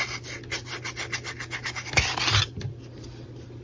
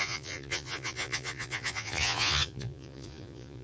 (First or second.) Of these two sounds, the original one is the first